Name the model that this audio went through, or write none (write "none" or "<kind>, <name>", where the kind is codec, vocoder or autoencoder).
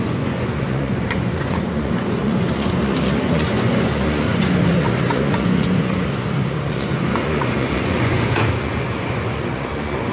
vocoder, Vocos